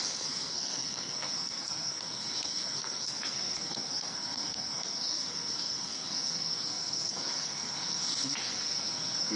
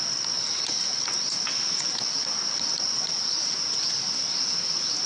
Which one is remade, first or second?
first